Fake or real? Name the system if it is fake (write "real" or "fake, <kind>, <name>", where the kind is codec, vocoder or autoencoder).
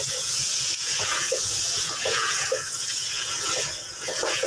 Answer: fake, vocoder, Vocos